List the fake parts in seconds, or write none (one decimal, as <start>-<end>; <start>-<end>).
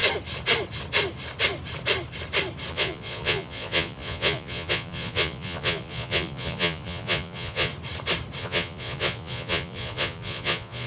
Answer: 2.7-7.7; 8.4-10.9